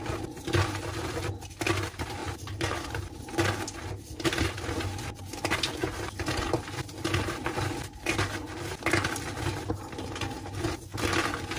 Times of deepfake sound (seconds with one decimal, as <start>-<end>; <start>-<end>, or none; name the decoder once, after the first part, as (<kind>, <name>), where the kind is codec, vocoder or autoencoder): none